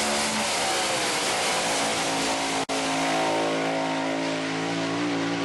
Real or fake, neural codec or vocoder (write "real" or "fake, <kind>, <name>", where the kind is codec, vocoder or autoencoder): real